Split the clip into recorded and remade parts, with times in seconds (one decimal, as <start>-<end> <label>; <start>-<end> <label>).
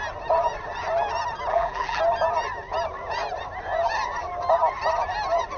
0.0-1.5 recorded; 1.5-2.0 remade; 2.0-5.6 recorded